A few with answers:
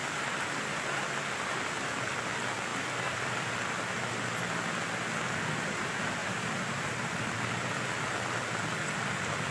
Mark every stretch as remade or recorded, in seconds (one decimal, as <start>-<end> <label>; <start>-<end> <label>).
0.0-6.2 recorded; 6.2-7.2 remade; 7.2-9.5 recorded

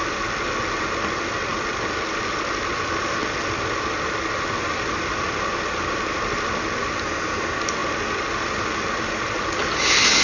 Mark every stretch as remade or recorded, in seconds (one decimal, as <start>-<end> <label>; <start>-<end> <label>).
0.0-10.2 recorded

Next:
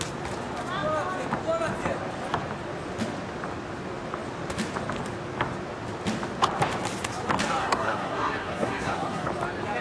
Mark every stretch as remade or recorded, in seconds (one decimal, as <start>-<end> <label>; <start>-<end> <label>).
0.0-7.6 recorded; 7.6-9.3 remade; 9.3-9.8 recorded

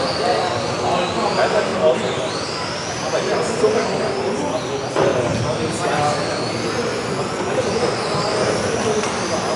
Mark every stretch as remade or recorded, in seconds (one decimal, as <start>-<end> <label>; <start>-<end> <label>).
0.0-6.9 recorded; 6.9-8.2 remade; 8.2-9.6 recorded